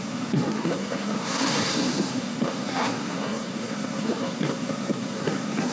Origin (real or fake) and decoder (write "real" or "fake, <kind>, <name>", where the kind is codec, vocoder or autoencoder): fake, codec, SNAC